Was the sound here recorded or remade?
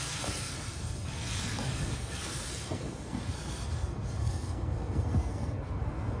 remade